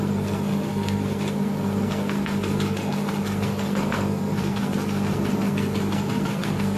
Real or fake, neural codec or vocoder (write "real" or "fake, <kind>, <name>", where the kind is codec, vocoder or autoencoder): fake, codec, SNAC